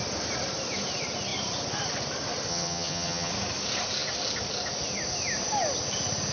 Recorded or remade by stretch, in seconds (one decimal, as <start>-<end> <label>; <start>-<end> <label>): 0.0-2.5 recorded; 2.5-3.3 remade; 3.3-6.3 recorded